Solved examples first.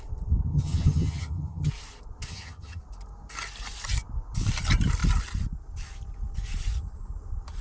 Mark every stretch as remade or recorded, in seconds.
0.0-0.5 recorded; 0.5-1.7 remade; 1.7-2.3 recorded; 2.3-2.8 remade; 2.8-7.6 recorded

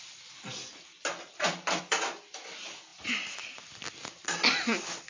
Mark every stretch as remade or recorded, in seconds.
0.0-5.1 recorded

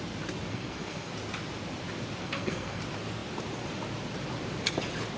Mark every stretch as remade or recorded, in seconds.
0.0-0.5 recorded; 0.5-1.1 remade; 1.1-2.2 recorded; 2.2-2.8 remade; 2.8-5.2 recorded

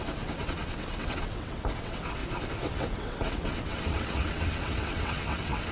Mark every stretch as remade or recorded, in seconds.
0.0-2.2 remade; 2.2-2.7 recorded; 2.7-5.7 remade

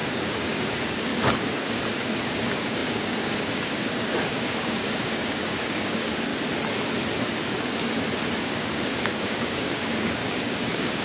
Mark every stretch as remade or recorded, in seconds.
0.0-1.1 remade; 1.1-2.3 recorded; 2.3-6.3 remade; 6.3-8.4 recorded; 8.4-11.0 remade